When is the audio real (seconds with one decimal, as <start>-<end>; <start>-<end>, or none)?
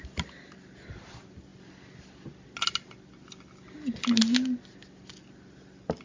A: 0.0-6.0